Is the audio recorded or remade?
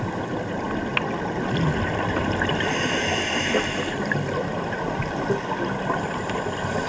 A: recorded